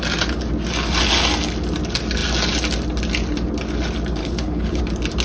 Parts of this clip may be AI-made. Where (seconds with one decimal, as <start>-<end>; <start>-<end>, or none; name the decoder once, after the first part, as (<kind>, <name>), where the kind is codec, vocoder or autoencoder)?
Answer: 4.2-4.8 (codec, HILCodec)